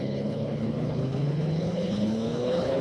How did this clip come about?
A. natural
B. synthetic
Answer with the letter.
B